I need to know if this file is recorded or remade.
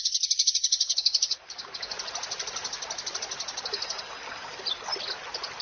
recorded